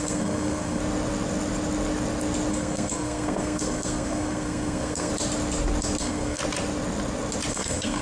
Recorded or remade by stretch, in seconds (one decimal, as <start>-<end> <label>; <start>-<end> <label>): 0.0-0.8 remade; 0.8-2.5 recorded; 2.5-5.1 remade; 5.1-6.0 recorded; 6.0-6.4 remade; 6.4-7.5 recorded; 7.5-8.0 remade